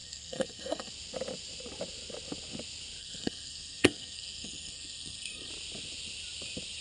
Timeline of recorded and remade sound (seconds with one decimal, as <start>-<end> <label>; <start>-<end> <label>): 0.0-0.9 remade; 0.9-3.0 recorded; 3.0-5.5 remade; 5.5-6.8 recorded

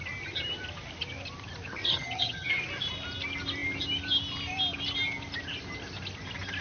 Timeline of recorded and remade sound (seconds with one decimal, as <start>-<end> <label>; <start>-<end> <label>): 0.0-1.8 recorded; 1.8-2.5 remade; 2.5-6.6 recorded